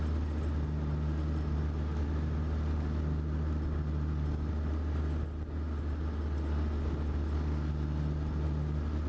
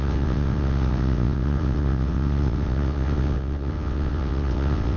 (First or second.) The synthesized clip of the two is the second